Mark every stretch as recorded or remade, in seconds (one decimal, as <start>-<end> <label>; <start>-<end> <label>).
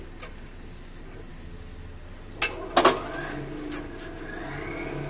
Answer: 0.0-5.1 recorded